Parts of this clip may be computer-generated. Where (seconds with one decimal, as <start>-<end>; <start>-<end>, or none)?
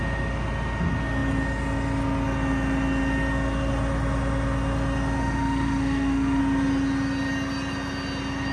5.2-6.4